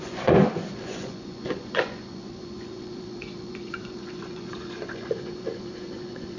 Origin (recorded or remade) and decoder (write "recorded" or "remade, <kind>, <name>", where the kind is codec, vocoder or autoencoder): remade, vocoder, Vocos